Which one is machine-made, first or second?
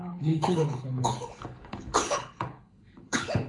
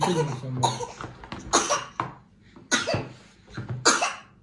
first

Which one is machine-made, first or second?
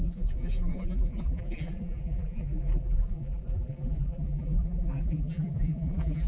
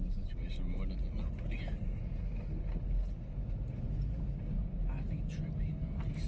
first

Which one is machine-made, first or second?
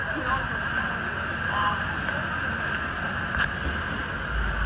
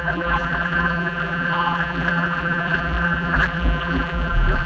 second